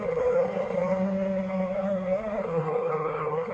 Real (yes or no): no